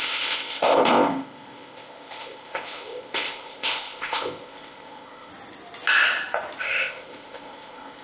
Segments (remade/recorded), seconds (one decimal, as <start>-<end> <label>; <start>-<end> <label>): 0.0-5.3 remade; 5.3-6.6 recorded; 6.6-8.0 remade

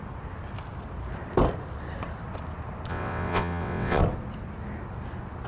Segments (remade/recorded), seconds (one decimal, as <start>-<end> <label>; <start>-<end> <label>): 0.0-2.9 recorded; 2.9-4.0 remade; 4.0-5.5 recorded

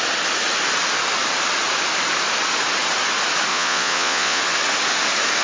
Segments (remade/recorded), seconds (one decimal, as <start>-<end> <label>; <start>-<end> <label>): 0.0-3.5 recorded; 3.5-4.4 remade; 4.4-5.4 recorded

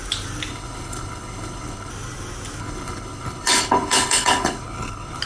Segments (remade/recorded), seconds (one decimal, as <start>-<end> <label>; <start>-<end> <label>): 0.0-0.5 recorded; 0.5-1.9 remade; 1.9-2.6 recorded; 2.6-5.2 remade